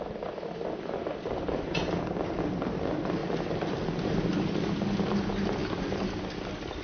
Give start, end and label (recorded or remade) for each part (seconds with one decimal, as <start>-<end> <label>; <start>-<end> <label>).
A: 0.0-1.8 remade; 1.8-3.2 recorded; 3.2-4.2 remade; 4.2-6.8 recorded